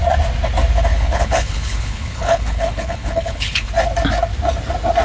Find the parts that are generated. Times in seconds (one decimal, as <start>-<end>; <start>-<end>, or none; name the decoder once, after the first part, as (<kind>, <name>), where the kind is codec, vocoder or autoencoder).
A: 0.9-3.7 (codec, HILCodec)